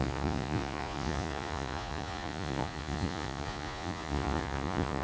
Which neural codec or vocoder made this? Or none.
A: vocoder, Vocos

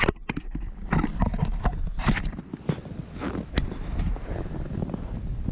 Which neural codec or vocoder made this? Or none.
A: none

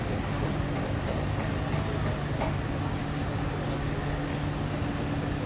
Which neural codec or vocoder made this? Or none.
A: none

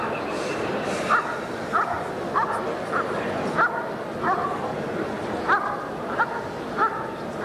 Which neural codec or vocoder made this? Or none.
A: none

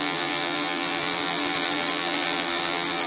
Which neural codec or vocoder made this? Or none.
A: vocoder, BigVGAN v2